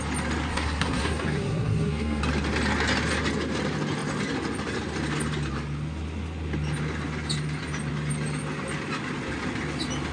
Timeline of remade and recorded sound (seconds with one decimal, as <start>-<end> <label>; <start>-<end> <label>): 0.0-0.5 recorded; 0.5-2.2 remade; 2.2-10.1 recorded

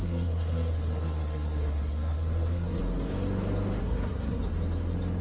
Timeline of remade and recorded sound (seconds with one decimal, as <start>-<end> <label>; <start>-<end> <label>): 0.0-2.8 remade; 2.8-3.8 recorded; 3.8-4.4 remade; 4.4-5.2 recorded

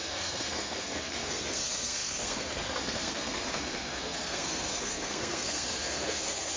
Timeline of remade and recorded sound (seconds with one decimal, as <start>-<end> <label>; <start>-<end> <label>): 0.0-6.6 remade

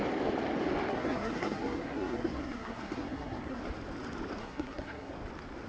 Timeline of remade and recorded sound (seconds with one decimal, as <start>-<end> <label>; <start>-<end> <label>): 0.0-0.9 recorded; 0.9-3.6 remade; 3.6-4.4 recorded; 4.4-5.1 remade; 5.1-5.7 recorded

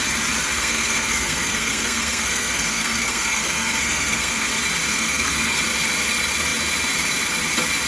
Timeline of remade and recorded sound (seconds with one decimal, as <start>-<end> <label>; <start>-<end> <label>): 0.0-0.5 recorded; 0.5-4.5 remade; 4.5-4.9 recorded; 4.9-5.6 remade; 5.6-7.9 recorded

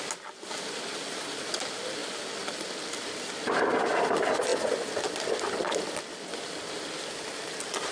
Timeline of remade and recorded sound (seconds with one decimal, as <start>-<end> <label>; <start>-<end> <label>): 0.0-7.9 recorded

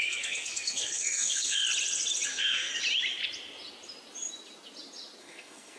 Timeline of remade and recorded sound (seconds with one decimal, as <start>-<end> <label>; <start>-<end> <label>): 0.0-1.6 remade; 1.6-2.3 recorded; 2.3-2.7 remade; 2.7-5.2 recorded; 5.2-5.8 remade